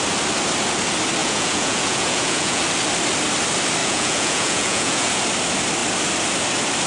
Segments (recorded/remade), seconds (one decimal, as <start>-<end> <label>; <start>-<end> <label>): 0.0-1.2 recorded; 1.2-2.6 remade; 2.6-3.8 recorded; 3.8-5.2 remade; 5.2-6.9 recorded